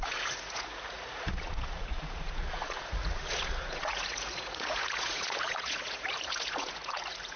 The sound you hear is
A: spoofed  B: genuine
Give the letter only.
A